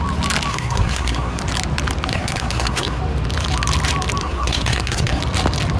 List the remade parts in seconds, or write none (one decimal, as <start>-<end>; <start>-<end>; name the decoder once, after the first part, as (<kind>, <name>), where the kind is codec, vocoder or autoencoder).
0.5-1.4 (codec, SNAC); 2.1-3.0; 4.2-5.2